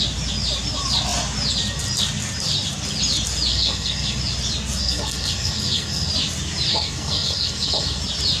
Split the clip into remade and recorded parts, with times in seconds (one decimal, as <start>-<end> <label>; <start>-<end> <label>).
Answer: 0.0-3.5 recorded; 3.5-4.2 remade; 4.2-4.8 recorded; 4.8-6.1 remade; 6.1-6.7 recorded; 6.7-8.0 remade; 8.0-8.4 recorded